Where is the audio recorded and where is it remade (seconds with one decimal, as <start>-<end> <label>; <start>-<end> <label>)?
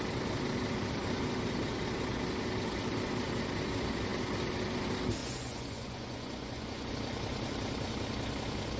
0.0-5.2 recorded; 5.2-6.9 remade; 6.9-8.8 recorded